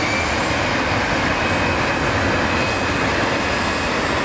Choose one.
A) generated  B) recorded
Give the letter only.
B